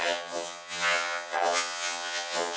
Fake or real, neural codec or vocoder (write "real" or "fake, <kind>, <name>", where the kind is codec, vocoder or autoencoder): fake, vocoder, HiFi-GAN